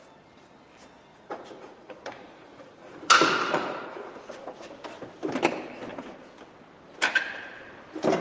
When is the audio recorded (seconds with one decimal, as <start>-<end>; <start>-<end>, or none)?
0.0-1.1; 4.7-8.2